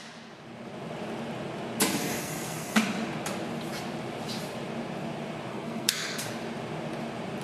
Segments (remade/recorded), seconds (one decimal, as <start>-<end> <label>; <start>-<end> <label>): 0.0-2.2 recorded; 2.2-2.8 remade; 2.8-5.5 recorded; 5.5-6.3 remade; 6.3-7.4 recorded